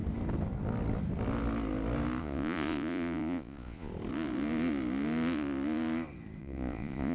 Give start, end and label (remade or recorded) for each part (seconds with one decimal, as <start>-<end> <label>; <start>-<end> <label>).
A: 0.0-2.2 recorded; 2.2-3.9 remade; 3.9-6.4 recorded; 6.4-7.1 remade